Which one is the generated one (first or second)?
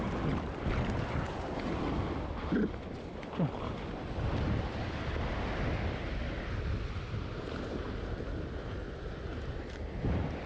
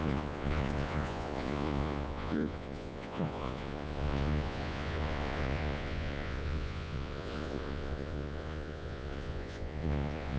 second